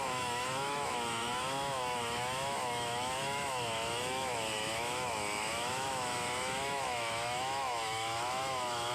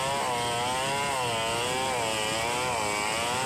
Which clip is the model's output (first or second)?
first